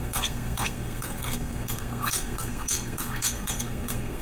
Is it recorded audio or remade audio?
remade